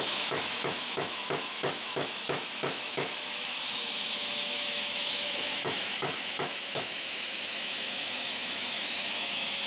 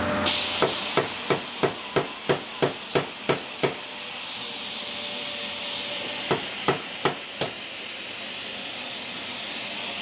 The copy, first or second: first